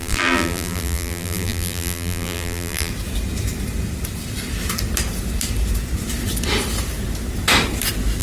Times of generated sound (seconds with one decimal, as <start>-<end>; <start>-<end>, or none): 0.0-2.9